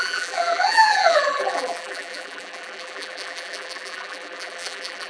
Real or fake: fake